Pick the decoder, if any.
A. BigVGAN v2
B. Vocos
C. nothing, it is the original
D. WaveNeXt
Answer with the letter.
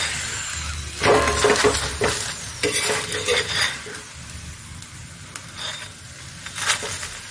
C